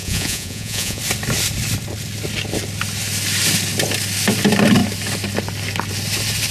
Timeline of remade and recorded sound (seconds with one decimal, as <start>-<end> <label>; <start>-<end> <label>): 0.0-1.0 remade; 1.0-6.5 recorded

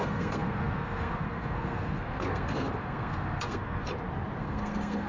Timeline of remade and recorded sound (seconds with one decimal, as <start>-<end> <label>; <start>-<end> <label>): 0.0-3.9 remade; 3.9-4.4 recorded; 4.4-5.1 remade

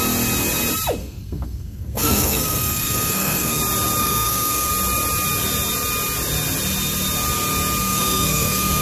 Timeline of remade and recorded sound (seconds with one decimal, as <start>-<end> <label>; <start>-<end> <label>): 0.0-1.0 recorded; 1.0-3.6 remade; 3.6-4.0 recorded; 4.0-4.7 remade; 4.7-7.8 recorded; 7.8-8.8 remade